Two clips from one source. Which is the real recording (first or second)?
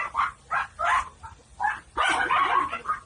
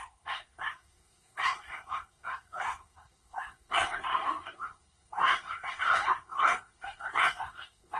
first